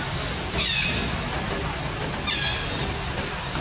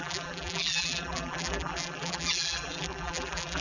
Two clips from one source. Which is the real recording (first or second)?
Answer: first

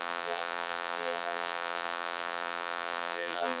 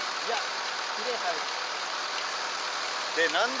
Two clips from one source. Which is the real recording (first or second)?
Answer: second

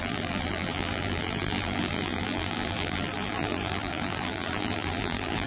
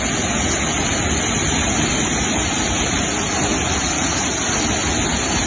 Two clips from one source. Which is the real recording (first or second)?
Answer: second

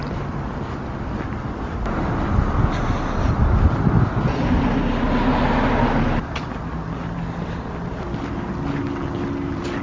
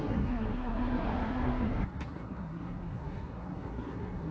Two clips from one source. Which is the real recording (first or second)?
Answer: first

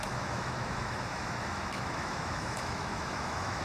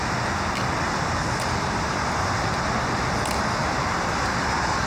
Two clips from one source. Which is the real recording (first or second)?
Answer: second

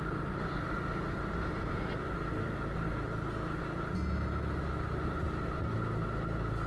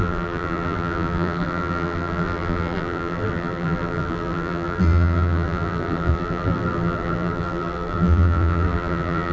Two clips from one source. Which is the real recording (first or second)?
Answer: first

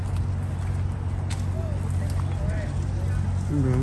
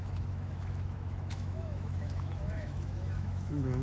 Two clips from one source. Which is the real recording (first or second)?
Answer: first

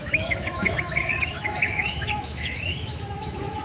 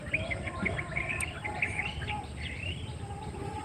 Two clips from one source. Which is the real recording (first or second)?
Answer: second